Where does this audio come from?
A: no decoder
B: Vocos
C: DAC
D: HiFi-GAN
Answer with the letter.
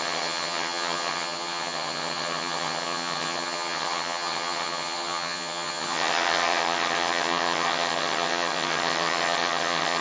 D